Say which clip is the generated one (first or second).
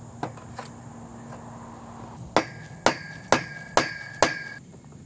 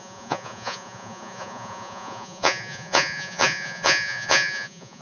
second